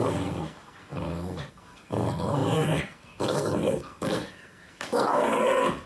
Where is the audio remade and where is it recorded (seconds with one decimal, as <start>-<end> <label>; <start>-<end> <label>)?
0.0-5.9 remade